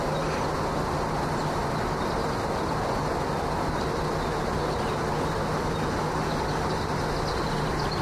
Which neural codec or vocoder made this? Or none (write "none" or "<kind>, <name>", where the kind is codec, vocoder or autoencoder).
none